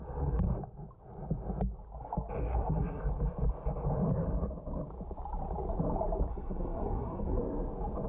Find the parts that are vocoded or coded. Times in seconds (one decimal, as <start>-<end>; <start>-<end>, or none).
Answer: 2.4-3.0; 6.3-7.4